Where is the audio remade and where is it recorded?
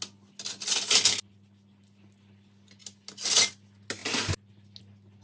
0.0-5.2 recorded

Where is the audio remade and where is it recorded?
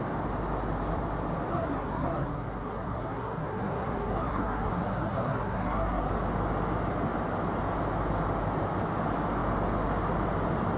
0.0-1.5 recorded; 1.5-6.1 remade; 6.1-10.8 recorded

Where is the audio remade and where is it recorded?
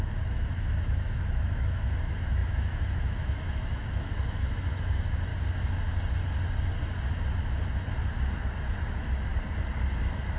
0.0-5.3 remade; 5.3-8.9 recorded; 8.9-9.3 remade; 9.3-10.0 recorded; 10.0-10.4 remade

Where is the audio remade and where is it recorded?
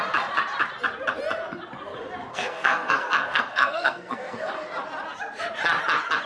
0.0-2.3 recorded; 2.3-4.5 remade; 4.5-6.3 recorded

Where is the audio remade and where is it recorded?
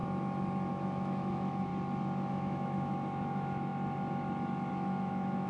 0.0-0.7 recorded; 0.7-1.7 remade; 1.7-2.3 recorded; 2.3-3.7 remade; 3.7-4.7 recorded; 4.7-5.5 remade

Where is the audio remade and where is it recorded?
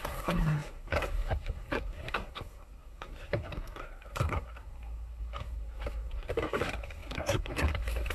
0.0-8.1 remade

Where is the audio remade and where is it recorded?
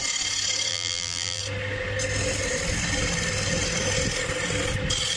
0.0-0.7 recorded; 0.7-1.4 remade; 1.4-5.2 recorded